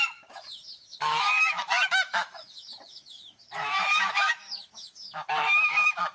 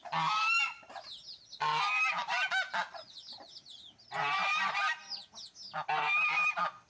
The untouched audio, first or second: second